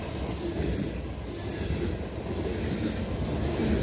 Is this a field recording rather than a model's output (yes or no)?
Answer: yes